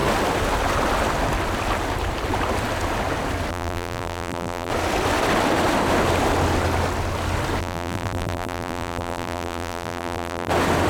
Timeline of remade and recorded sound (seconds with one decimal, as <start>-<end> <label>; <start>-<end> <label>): 0.0-3.5 recorded; 3.5-4.7 remade; 4.7-7.6 recorded; 7.6-10.5 remade; 10.5-10.9 recorded